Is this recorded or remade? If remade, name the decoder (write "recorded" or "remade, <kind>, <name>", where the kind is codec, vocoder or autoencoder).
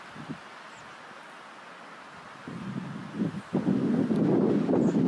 recorded